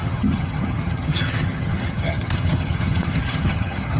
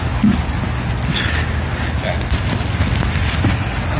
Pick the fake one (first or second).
first